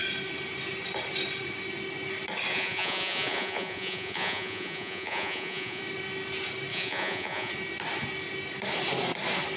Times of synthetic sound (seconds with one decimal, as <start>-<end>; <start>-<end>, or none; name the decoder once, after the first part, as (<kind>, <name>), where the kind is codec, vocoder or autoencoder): 2.5-5.8 (vocoder, Vocos); 6.7-7.5